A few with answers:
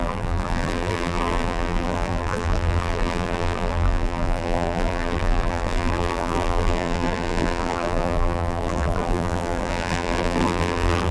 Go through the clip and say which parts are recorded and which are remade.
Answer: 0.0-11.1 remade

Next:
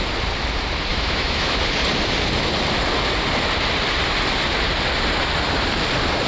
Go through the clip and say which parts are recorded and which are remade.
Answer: 0.0-0.9 recorded; 0.9-1.6 remade; 1.6-6.3 recorded

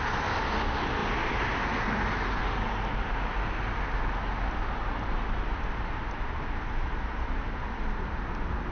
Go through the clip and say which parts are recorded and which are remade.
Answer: 0.0-8.7 recorded

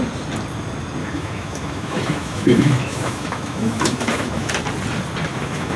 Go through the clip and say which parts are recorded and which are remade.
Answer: 0.0-1.0 recorded; 1.0-4.5 remade; 4.5-5.3 recorded; 5.3-5.8 remade

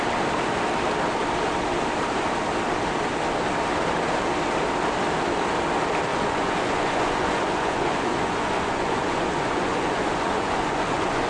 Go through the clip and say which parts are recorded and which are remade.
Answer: 0.0-6.1 recorded; 6.1-11.3 remade